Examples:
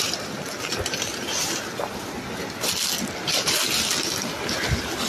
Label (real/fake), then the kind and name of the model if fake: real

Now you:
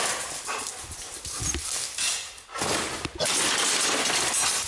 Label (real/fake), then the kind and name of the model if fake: real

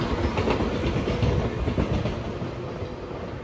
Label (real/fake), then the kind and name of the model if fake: real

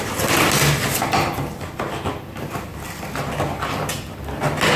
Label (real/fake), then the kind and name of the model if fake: real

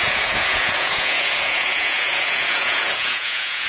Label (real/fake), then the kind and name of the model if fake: fake, vocoder, Vocos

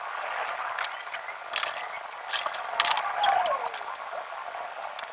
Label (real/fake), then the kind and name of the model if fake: real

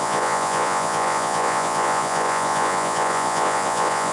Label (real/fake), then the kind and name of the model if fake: fake, vocoder, Vocos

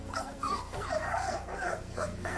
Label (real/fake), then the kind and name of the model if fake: fake, codec, SNAC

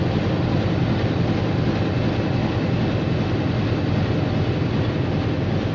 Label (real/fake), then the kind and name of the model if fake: real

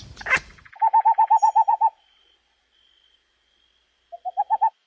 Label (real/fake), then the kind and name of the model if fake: fake, vocoder, BigVGAN v2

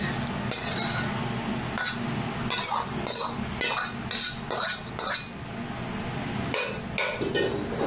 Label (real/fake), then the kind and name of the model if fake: real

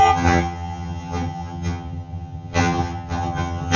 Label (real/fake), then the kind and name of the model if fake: fake, vocoder, HiFi-GAN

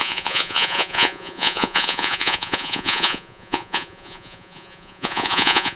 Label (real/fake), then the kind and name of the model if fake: fake, vocoder, Vocos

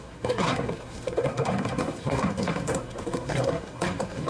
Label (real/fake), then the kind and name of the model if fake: fake, codec, SNAC